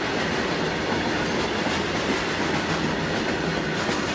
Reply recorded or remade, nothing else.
recorded